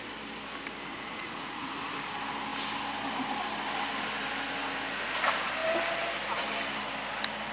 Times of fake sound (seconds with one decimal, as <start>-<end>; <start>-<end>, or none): 0.9-1.7